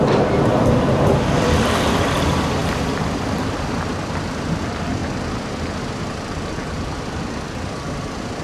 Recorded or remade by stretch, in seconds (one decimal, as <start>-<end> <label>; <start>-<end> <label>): 0.0-2.6 remade; 2.6-4.6 recorded; 4.6-5.0 remade; 5.0-5.9 recorded; 5.9-8.4 remade